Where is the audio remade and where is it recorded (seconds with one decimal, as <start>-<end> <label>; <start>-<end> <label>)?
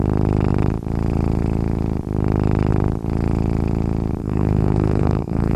0.0-4.2 recorded; 4.2-5.6 remade